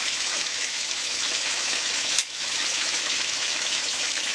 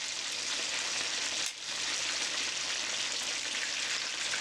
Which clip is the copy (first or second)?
first